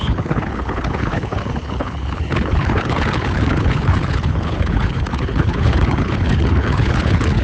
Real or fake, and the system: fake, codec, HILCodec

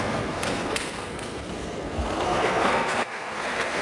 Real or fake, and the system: fake, codec, SNAC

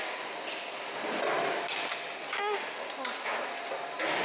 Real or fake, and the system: real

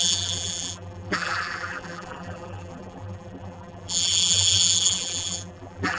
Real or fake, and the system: fake, vocoder, BigVGAN v2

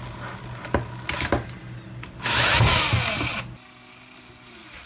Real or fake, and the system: real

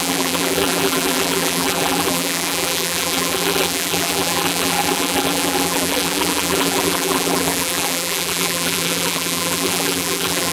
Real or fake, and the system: fake, vocoder, BigVGAN v2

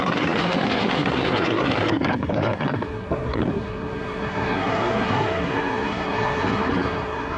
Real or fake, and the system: fake, codec, SNAC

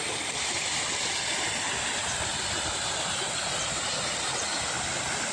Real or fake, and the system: real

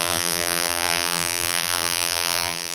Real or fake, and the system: fake, vocoder, BigVGAN v2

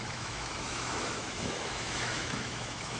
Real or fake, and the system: fake, autoencoder, DAC-VAE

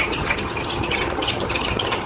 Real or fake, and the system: fake, vocoder, HiFi-GAN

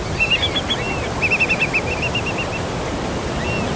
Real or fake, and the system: real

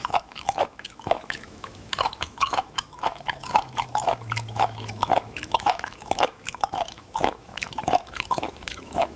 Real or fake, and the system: fake, autoencoder, DAC-VAE